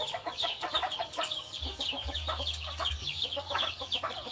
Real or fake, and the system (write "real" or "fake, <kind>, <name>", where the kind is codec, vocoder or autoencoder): fake, codec, DAC